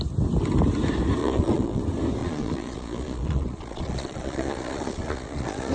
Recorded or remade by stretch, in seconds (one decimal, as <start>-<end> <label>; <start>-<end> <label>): 0.0-1.2 recorded; 1.2-1.8 remade; 1.8-2.2 recorded; 2.2-5.7 remade